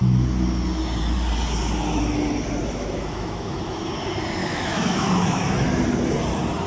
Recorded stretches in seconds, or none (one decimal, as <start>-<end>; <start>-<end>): 0.0-2.6; 3.9-4.4; 5.7-6.7